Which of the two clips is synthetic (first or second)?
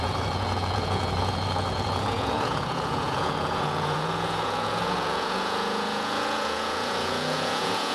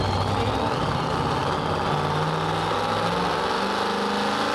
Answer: first